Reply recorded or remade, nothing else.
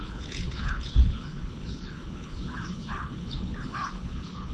remade